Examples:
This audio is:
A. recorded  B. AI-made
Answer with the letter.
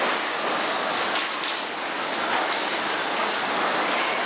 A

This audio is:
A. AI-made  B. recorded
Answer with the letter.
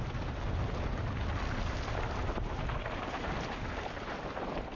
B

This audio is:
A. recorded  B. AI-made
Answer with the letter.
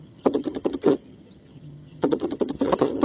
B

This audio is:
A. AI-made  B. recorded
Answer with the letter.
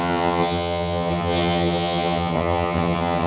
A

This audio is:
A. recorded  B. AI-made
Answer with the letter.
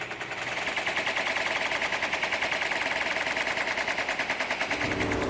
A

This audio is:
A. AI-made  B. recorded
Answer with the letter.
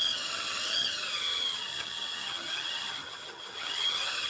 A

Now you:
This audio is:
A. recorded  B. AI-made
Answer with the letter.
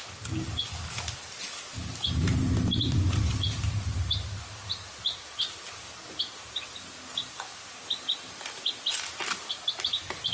A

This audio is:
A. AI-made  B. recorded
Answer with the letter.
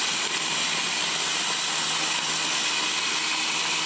B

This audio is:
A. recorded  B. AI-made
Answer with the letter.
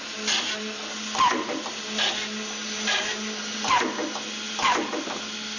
A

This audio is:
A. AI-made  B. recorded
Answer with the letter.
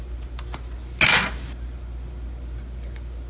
B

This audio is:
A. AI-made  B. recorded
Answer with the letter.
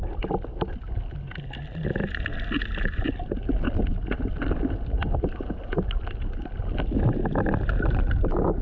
B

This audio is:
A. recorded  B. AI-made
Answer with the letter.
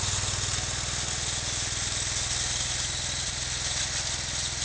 A